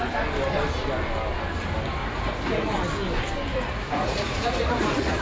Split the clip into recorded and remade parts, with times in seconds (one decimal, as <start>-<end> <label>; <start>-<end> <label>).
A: 0.0-2.0 recorded; 2.0-2.8 remade; 2.8-3.5 recorded; 3.5-5.2 remade